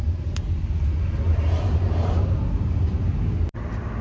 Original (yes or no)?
yes